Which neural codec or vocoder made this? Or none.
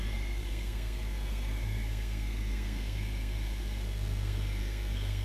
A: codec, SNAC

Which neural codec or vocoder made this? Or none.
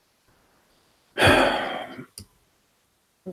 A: none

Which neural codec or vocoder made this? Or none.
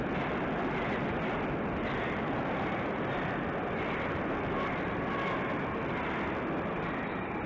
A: none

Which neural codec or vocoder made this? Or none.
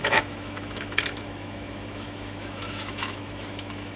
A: autoencoder, DAC-VAE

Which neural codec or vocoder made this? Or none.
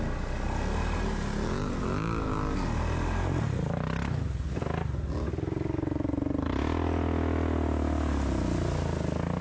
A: none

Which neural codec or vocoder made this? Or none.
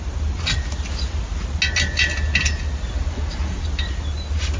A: none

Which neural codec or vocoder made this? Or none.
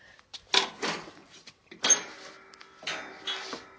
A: none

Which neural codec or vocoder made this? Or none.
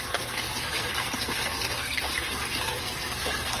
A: codec, SNAC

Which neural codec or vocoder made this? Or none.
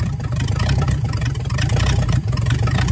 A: vocoder, BigVGAN v2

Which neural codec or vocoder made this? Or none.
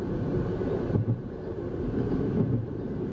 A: vocoder, BigVGAN v2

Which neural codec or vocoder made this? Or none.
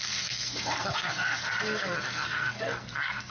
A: codec, SNAC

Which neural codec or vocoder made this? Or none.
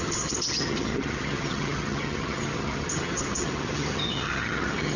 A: vocoder, HiFi-GAN